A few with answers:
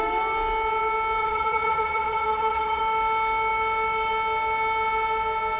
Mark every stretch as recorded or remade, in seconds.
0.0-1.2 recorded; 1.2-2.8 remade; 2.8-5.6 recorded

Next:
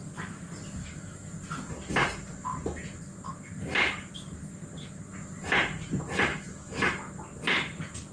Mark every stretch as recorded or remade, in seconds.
0.0-0.8 recorded; 0.8-1.3 remade; 1.3-6.3 recorded; 6.3-7.1 remade; 7.1-8.1 recorded

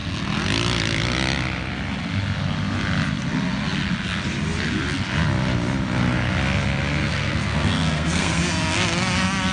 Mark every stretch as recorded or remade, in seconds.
0.0-7.1 recorded; 7.1-8.4 remade; 8.4-9.5 recorded

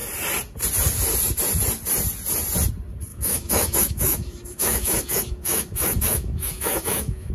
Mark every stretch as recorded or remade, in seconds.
0.0-3.1 recorded; 3.1-7.3 remade

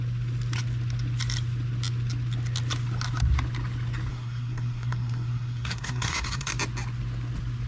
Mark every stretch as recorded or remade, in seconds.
0.0-4.1 recorded; 4.1-6.5 remade; 6.5-7.7 recorded

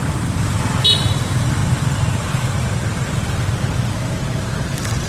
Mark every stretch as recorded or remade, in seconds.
0.0-5.1 recorded